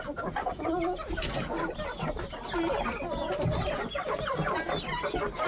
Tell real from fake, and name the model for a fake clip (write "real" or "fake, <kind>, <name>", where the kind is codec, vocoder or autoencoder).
real